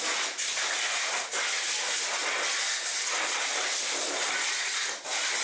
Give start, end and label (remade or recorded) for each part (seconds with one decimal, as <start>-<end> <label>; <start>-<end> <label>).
0.0-5.4 recorded